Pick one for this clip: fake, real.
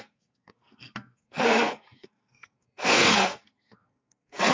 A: fake